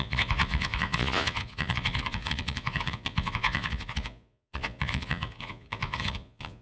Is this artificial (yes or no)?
yes